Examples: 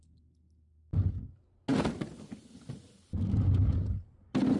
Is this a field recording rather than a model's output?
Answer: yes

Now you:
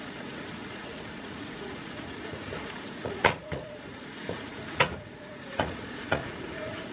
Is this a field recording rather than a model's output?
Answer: no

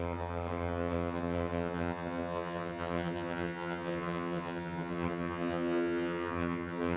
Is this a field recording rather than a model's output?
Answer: no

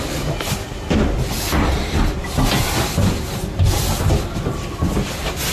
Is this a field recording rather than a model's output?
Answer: yes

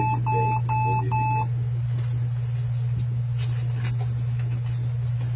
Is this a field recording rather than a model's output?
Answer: yes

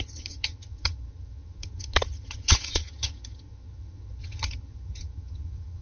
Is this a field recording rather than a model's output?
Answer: no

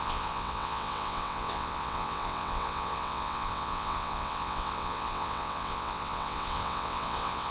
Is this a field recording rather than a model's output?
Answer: no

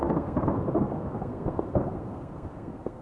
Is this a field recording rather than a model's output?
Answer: no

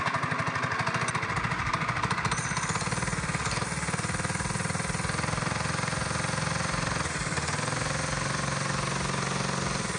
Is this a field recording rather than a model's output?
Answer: yes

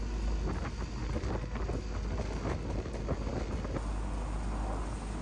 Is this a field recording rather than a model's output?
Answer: yes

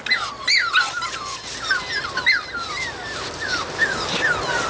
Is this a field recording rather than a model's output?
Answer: yes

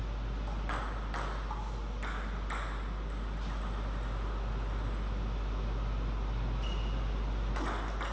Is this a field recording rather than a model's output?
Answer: yes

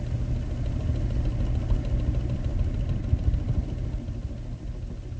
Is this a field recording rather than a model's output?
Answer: yes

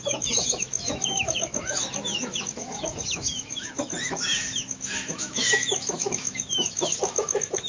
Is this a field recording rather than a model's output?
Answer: no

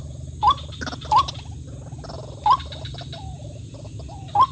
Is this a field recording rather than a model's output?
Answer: yes